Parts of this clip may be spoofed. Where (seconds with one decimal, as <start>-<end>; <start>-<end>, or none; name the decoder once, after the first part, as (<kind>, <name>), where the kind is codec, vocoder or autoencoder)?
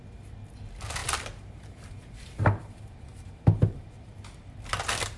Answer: 1.0-4.1 (vocoder, BigVGAN v2)